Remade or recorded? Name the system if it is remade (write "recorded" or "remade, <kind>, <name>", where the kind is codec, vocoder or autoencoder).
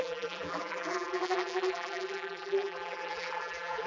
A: remade, vocoder, BigVGAN v2